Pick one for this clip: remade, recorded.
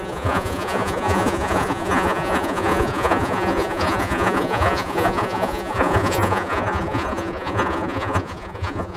remade